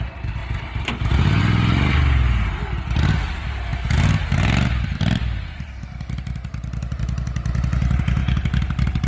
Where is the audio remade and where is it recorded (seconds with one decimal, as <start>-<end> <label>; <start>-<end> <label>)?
0.0-9.1 recorded